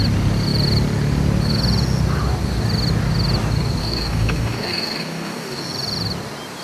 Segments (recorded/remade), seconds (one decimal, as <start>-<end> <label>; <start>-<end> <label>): 0.0-3.8 recorded; 3.8-5.6 remade; 5.6-6.6 recorded